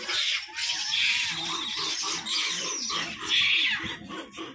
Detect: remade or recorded recorded